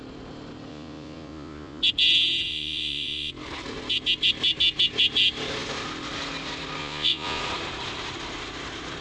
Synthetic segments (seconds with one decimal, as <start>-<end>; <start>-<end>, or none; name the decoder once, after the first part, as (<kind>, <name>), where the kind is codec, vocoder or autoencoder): 0.7-1.8 (vocoder, Vocos); 2.5-3.3; 6.8-7.4